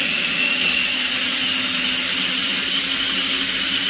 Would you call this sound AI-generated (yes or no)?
no